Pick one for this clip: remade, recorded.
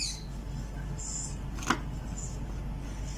recorded